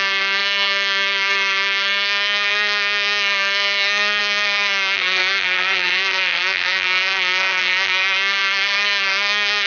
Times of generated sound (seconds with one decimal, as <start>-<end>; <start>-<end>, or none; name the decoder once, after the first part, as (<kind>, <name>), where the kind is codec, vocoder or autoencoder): 0.0-9.7 (codec, SNAC)